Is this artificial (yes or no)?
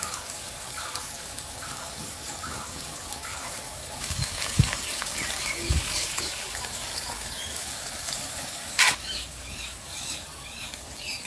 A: yes